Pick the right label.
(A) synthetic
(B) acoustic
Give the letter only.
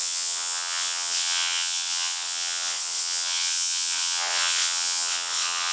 A